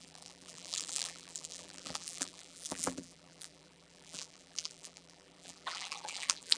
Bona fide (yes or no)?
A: no